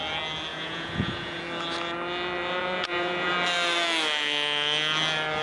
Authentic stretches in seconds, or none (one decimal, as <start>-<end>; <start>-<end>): 0.0-0.5; 1.4-2.6; 3.3-5.4